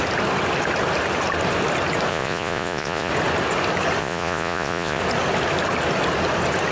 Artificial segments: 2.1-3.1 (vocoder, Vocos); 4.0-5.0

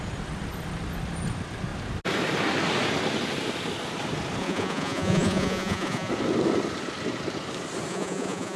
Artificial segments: 4.4-6.1 (vocoder, Vocos); 7.9-8.6

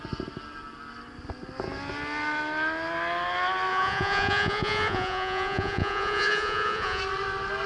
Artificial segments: 3.7-7.0 (vocoder, Vocos)

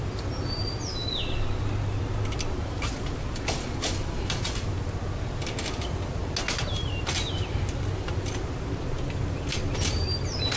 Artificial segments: none

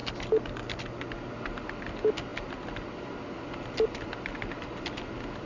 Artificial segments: none

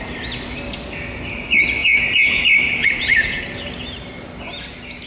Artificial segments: 1.8-2.4 (vocoder, Vocos); 2.8-3.4